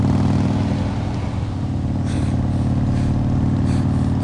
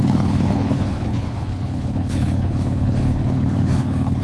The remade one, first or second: second